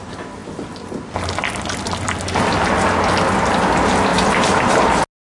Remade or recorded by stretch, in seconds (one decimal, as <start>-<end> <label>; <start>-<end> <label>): 0.0-5.4 recorded